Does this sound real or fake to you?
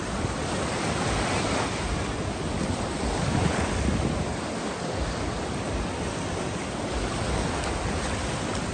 real